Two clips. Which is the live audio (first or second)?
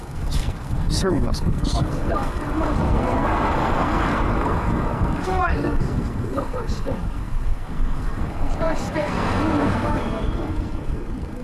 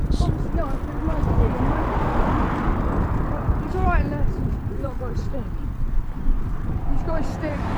second